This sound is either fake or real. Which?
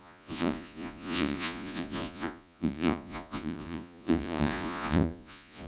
fake